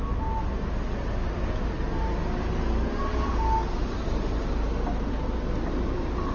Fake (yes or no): no